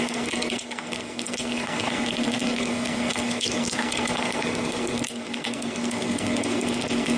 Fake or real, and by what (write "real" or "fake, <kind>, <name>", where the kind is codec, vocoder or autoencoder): fake, codec, SNAC